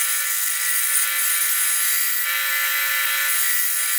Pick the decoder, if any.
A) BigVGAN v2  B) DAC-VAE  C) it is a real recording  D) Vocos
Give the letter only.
C